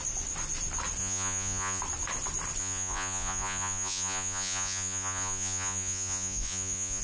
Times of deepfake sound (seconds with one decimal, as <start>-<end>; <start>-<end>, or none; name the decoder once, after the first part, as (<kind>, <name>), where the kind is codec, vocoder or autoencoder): 1.0-1.8 (vocoder, Vocos); 2.6-7.0